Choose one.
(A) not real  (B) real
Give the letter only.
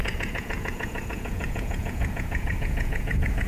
A